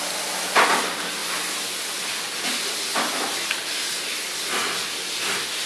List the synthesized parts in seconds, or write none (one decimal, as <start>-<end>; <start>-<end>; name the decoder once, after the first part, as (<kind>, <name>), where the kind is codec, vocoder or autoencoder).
none